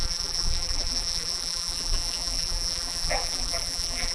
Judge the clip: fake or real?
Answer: fake